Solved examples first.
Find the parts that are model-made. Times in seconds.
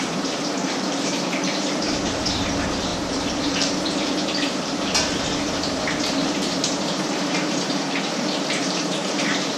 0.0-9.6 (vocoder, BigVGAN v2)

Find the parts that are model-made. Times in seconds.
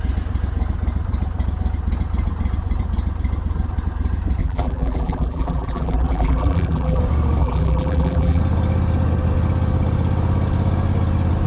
4.4-7.0 (vocoder, BigVGAN v2); 7.4-8.4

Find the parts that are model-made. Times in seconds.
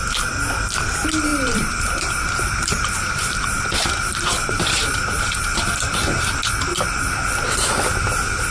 1.3-6.3 (vocoder, BigVGAN v2)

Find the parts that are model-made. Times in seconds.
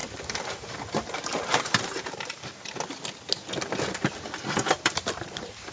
0.5-2.5 (vocoder, BigVGAN v2); 4.6-5.7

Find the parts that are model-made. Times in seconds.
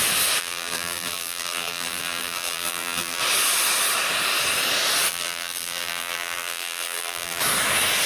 0.4-3.2 (vocoder, BigVGAN v2); 5.1-7.4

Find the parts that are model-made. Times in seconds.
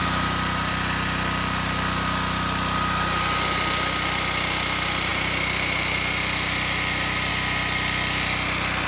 0.0-0.7 (vocoder, BigVGAN v2); 5.1-7.3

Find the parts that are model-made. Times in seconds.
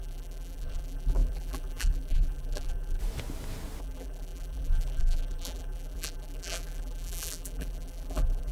0.0-3.0 (vocoder, BigVGAN v2); 3.8-8.5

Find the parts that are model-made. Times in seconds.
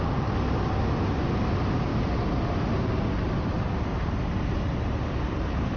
3.9-4.6 (vocoder, BigVGAN v2)